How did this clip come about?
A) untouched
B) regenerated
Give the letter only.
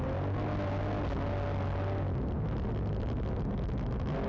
A